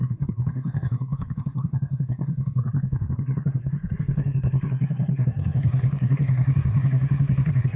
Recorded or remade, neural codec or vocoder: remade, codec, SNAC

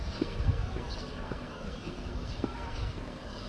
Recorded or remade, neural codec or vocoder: remade, codec, SNAC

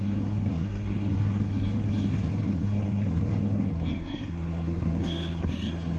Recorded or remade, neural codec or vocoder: remade, codec, SNAC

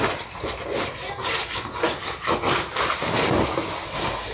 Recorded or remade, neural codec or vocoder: recorded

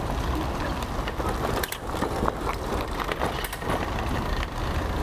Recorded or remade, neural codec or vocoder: recorded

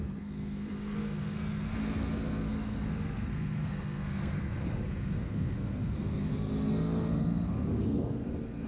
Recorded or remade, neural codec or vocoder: remade, codec, SNAC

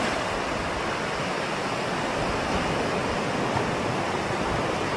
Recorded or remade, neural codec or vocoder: recorded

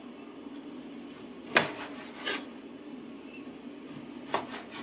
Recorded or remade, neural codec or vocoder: recorded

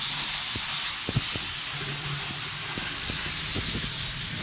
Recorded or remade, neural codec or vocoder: recorded